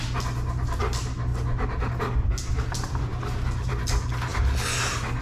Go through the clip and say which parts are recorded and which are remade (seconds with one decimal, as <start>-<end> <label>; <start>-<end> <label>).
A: 0.0-5.2 recorded